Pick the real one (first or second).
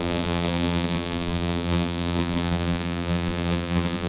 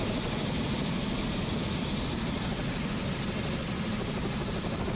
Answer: second